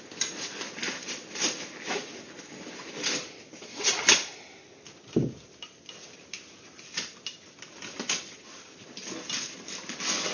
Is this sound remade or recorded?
recorded